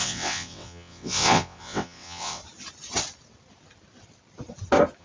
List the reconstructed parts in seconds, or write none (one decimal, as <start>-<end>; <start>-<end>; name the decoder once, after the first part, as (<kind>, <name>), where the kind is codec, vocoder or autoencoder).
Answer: 0.0-2.4 (vocoder, WaveNeXt)